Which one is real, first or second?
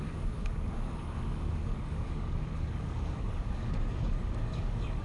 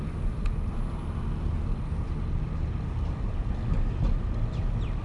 second